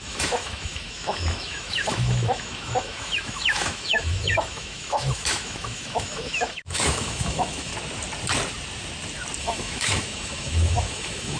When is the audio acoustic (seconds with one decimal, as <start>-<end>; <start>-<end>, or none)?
7.7-9.4